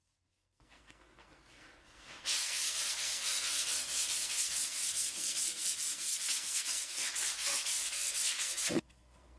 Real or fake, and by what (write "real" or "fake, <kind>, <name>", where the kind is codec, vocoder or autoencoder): fake, codec, SNAC